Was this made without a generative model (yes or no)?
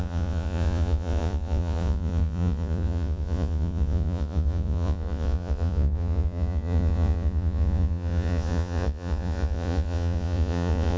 no